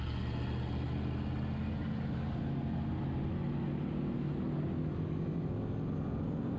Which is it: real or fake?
real